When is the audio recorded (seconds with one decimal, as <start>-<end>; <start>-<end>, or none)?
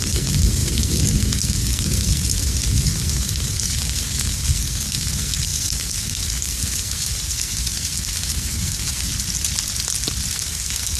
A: 9.1-10.3